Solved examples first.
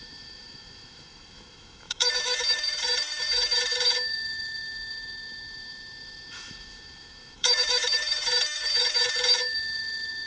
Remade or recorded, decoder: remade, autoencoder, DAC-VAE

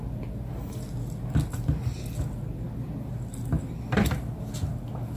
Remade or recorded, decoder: recorded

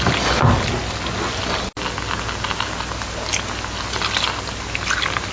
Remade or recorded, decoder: recorded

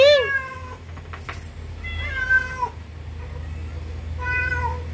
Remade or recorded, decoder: recorded